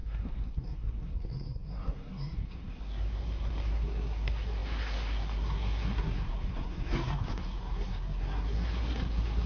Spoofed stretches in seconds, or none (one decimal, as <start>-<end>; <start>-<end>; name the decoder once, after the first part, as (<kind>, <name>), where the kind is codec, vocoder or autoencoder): 0.0-9.5 (codec, SNAC)